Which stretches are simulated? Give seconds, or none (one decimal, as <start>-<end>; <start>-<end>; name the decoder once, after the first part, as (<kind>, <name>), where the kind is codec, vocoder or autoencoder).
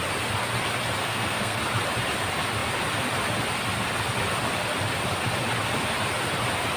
1.0-1.6 (codec, SNAC)